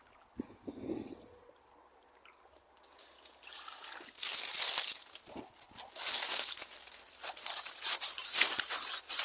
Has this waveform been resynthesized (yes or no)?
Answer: no